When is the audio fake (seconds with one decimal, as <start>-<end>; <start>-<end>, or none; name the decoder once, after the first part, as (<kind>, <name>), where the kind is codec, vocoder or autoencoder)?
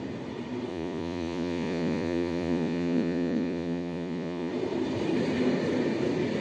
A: 0.7-4.5 (vocoder, Vocos)